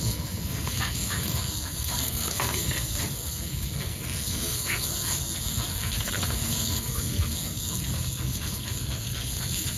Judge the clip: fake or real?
fake